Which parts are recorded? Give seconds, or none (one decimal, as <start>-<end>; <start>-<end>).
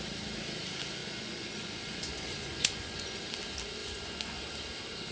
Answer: 0.0-1.0; 3.2-3.8; 4.4-5.1